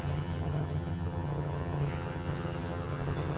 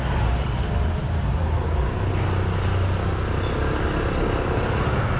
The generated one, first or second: first